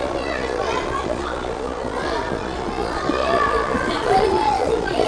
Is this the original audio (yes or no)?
no